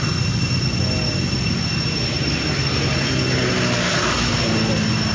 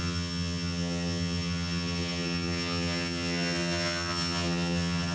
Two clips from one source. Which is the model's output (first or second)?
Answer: second